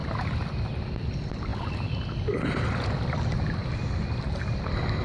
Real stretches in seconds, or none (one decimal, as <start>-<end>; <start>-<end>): 0.0-5.0